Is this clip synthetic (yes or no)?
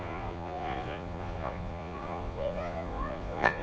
yes